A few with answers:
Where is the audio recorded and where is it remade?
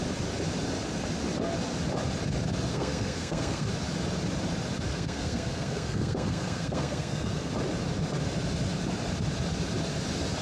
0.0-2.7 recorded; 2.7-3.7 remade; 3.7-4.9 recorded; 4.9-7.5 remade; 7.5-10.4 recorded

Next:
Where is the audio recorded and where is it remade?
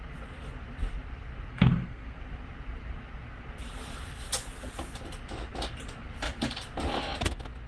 0.0-1.5 recorded; 1.5-2.2 remade; 2.2-7.7 recorded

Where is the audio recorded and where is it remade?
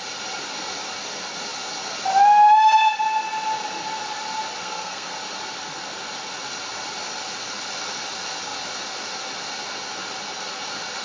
0.0-4.6 recorded; 4.6-5.1 remade; 5.1-11.0 recorded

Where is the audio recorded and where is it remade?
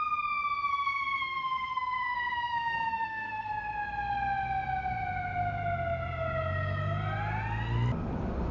0.0-0.7 recorded; 0.7-3.5 remade; 3.5-8.5 recorded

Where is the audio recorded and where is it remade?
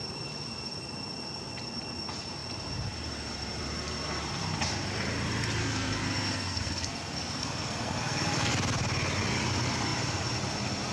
0.0-5.6 recorded; 5.6-8.5 remade; 8.5-10.9 recorded